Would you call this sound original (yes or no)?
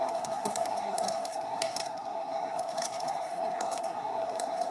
no